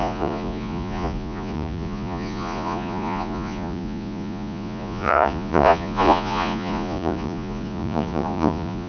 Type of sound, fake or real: fake